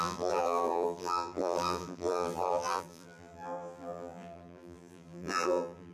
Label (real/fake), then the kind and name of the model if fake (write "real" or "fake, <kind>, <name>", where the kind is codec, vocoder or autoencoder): fake, vocoder, BigVGAN v2